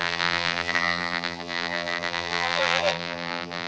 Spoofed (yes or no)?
yes